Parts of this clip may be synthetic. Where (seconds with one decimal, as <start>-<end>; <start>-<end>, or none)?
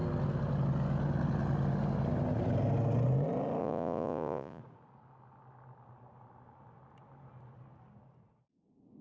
3.6-4.6